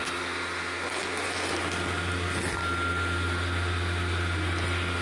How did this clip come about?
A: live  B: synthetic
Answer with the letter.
A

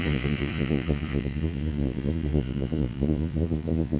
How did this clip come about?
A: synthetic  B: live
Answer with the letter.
A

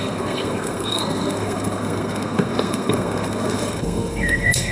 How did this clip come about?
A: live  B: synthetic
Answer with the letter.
B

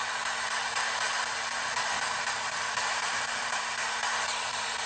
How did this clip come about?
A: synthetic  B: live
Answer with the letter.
A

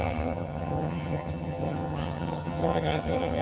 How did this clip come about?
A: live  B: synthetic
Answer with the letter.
B